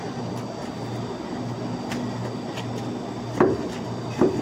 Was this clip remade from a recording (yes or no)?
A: no